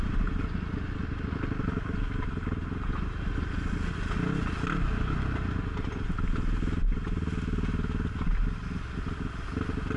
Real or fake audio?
real